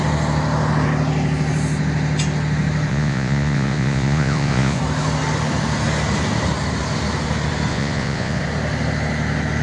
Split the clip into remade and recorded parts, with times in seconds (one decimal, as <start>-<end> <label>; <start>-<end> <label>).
0.0-2.9 recorded; 2.9-4.8 remade; 4.8-7.7 recorded; 7.7-8.4 remade; 8.4-9.6 recorded